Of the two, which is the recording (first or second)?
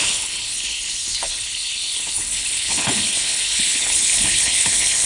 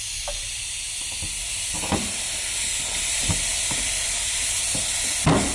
second